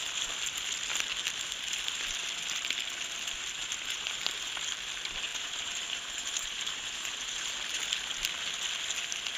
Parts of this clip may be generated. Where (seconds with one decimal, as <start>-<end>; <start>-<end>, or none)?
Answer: 3.6-4.4; 5.3-7.5